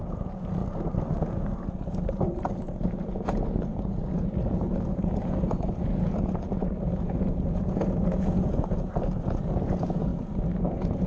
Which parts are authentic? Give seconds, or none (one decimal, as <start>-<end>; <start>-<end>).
0.6-1.1; 10.1-10.6